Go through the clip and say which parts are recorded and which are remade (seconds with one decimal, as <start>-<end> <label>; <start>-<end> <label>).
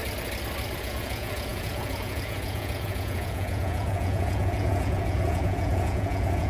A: 0.0-0.8 recorded; 0.8-6.5 remade